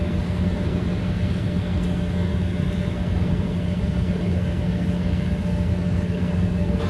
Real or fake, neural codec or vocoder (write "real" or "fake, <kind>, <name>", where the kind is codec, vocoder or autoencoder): fake, codec, SNAC